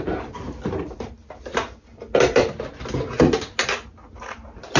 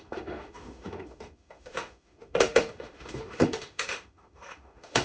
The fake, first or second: second